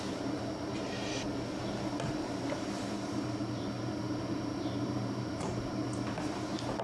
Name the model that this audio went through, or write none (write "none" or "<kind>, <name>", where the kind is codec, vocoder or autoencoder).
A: vocoder, BigVGAN v2